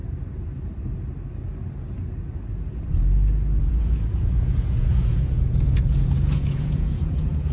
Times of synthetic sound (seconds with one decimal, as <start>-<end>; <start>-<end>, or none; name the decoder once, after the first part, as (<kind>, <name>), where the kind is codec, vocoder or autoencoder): 3.6-7.5 (vocoder, Vocos)